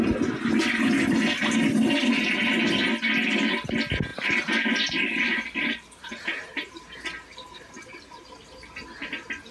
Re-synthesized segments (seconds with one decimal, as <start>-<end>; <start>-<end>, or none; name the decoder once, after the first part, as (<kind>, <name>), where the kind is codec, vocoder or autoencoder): 4.1-7.0 (vocoder, BigVGAN v2)